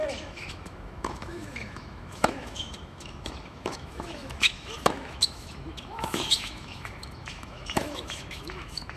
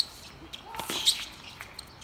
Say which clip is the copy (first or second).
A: first